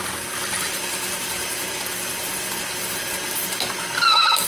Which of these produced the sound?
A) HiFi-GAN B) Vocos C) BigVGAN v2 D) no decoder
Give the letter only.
D